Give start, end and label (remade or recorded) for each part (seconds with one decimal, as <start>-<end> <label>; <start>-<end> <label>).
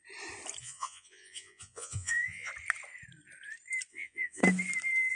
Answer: 0.0-0.6 recorded; 0.6-2.5 remade; 2.5-3.9 recorded; 3.9-4.4 remade; 4.4-5.1 recorded